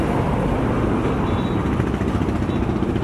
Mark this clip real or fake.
real